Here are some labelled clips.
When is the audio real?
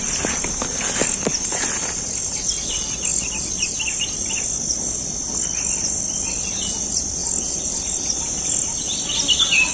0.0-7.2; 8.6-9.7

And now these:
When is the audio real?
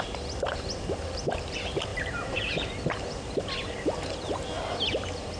0.0-1.9; 2.5-3.6; 4.4-5.4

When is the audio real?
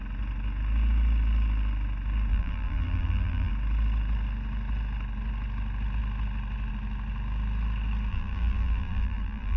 0.0-2.3; 3.5-8.1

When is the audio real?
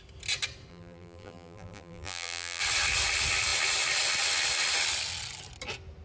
0.0-0.7; 2.6-6.0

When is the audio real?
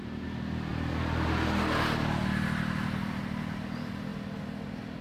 0.0-5.0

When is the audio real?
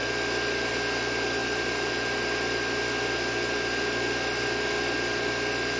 0.0-1.4; 2.1-5.8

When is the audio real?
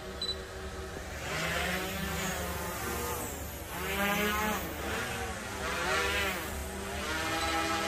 0.0-7.9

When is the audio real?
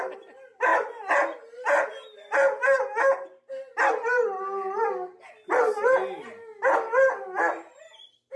0.0-8.4